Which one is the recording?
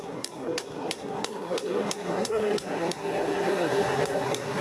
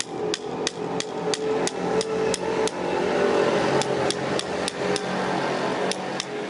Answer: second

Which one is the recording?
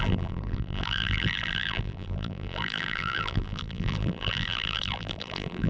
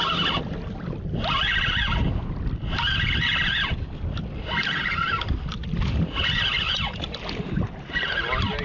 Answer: second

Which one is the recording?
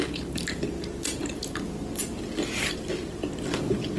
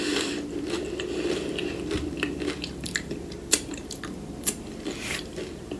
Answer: first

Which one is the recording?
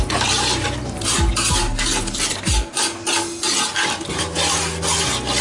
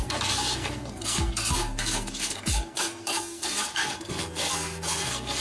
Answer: first